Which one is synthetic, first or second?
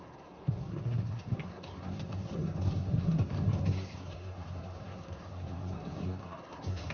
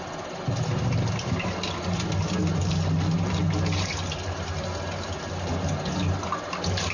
first